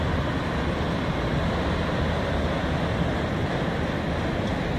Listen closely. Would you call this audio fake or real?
real